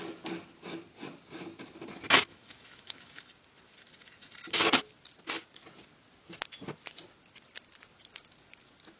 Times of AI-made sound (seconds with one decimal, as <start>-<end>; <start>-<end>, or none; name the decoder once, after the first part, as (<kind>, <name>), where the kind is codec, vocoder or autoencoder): 2.3-3.2 (autoencoder, DAC-VAE)